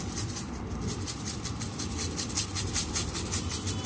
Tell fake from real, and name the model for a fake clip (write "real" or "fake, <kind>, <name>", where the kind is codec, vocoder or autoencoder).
fake, vocoder, BigVGAN v2